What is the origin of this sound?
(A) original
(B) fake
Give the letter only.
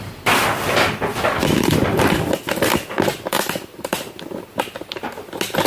A